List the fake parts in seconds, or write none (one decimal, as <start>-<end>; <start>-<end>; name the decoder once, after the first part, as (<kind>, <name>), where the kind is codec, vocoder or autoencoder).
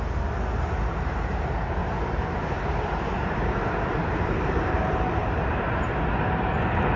1.8-5.9 (vocoder, BigVGAN v2)